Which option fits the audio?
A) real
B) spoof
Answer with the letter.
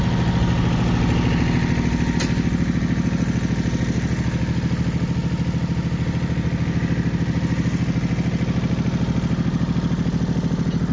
A